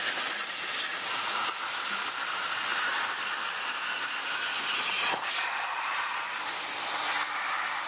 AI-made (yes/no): no